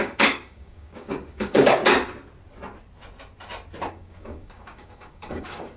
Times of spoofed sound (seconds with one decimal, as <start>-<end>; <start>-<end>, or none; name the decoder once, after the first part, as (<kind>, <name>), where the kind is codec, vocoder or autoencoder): 0.0-1.8 (codec, DAC); 3.9-5.8